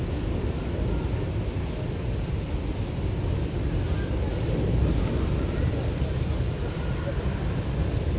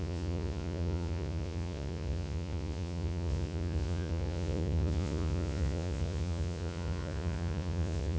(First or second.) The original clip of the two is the first